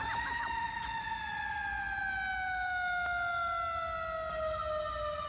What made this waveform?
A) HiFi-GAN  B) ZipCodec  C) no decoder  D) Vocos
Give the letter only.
C